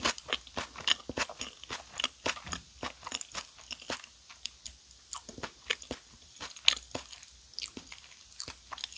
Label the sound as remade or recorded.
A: recorded